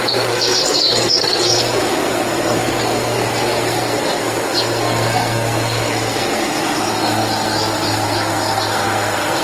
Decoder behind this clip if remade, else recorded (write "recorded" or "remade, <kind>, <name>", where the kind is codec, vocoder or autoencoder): remade, codec, SNAC